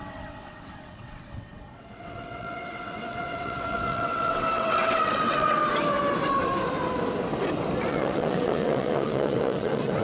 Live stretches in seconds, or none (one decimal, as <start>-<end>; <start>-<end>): 5.6-7.9